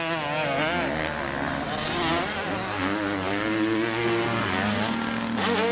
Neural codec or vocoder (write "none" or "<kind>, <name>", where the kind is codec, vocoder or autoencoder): none